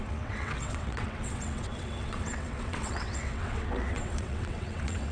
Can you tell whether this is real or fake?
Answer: fake